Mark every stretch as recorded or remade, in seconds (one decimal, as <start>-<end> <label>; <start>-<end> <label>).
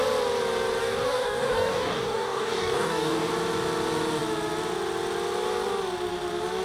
0.0-0.8 recorded; 0.8-3.3 remade; 3.3-6.6 recorded